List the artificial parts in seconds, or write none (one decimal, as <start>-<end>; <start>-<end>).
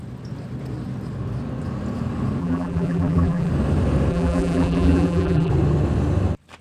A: 2.4-3.5; 4.1-5.5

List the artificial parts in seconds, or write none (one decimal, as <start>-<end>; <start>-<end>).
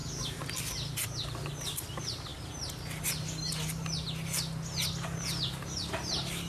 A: none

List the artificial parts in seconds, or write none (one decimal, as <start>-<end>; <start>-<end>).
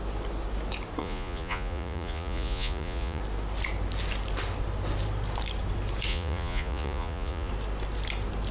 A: 1.0-3.2; 6.1-7.5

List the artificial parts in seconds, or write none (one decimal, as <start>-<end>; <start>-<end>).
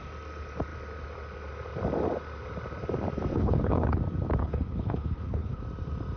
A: 3.3-4.0; 4.4-5.6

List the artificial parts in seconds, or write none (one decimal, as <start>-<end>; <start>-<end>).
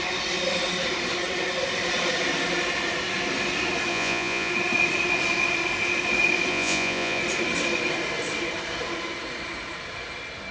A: 3.9-4.5; 6.5-7.2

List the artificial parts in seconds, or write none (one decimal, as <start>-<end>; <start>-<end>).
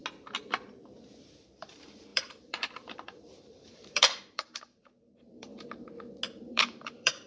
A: 1.4-5.5; 6.3-7.3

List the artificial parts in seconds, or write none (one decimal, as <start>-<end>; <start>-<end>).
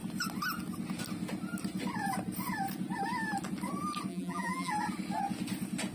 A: 4.1-4.7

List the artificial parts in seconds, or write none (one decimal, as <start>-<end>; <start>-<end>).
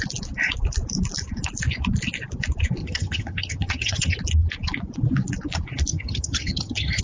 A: 2.8-4.2; 5.9-7.0